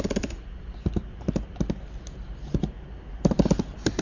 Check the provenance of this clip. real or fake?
real